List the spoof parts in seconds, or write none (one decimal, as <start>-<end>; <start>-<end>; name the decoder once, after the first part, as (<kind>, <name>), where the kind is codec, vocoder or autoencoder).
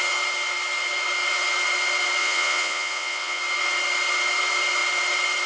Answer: 2.2-3.4 (vocoder, Vocos)